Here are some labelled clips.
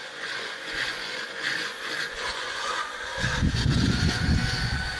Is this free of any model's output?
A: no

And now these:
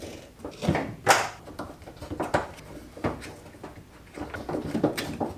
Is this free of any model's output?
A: yes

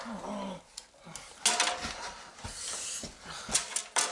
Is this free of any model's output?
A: yes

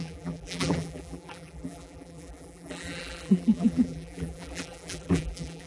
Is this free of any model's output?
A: no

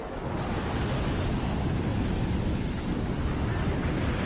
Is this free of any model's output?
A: yes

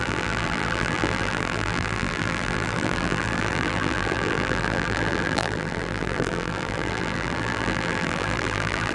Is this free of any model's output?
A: no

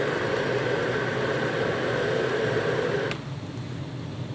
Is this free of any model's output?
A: yes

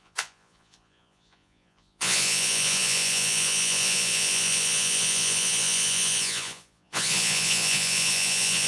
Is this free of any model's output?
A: no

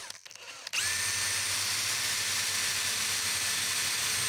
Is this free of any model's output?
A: yes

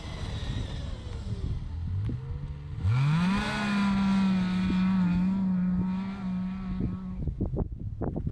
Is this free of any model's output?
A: yes